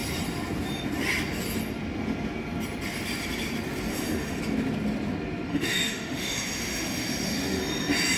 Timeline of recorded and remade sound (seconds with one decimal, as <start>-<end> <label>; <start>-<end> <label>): 0.0-3.9 recorded; 3.9-4.4 remade; 4.4-5.5 recorded; 5.5-7.6 remade; 7.6-8.2 recorded